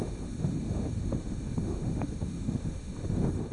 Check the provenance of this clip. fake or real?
fake